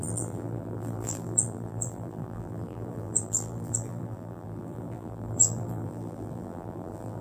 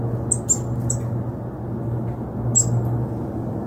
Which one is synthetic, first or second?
first